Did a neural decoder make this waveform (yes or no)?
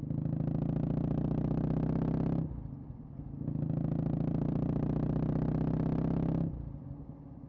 no